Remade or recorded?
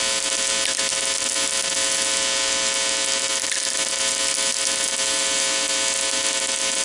recorded